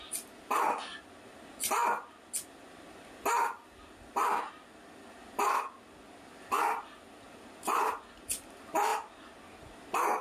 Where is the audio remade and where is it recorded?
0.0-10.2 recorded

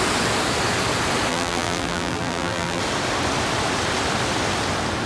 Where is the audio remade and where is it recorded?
0.0-1.3 recorded; 1.3-2.8 remade; 2.8-5.1 recorded

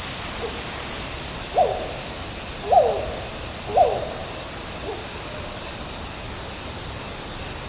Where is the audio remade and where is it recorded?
0.0-7.7 recorded

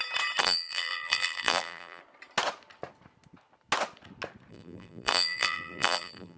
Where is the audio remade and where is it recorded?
0.0-0.4 recorded; 0.4-2.0 remade; 2.0-4.5 recorded; 4.5-6.4 remade

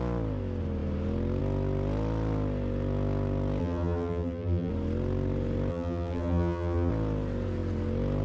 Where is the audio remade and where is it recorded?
0.0-3.6 recorded; 3.6-4.7 remade; 4.7-5.7 recorded; 5.7-6.9 remade; 6.9-8.2 recorded

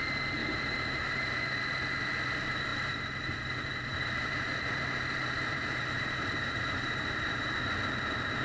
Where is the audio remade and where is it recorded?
0.0-0.4 recorded; 0.4-1.6 remade; 1.6-2.7 recorded; 2.7-7.5 remade; 7.5-8.4 recorded

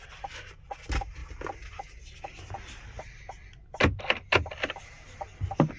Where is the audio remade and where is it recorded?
0.0-5.8 recorded

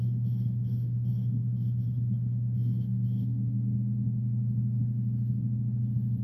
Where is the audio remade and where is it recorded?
0.0-6.2 recorded